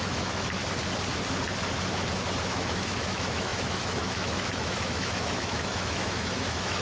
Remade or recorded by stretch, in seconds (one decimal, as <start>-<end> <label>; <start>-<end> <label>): 0.0-0.6 remade; 0.6-2.4 recorded; 2.4-6.8 remade